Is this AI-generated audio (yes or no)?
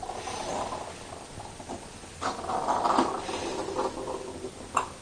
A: no